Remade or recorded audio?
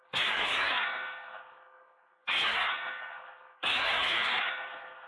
remade